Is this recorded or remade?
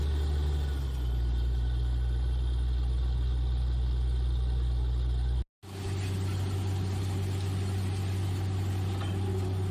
recorded